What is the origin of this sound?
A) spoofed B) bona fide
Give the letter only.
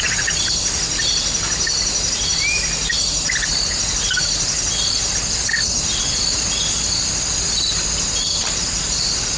B